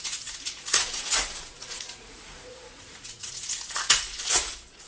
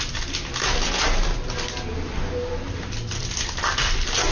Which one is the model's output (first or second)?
first